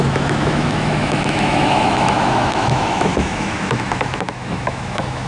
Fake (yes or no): yes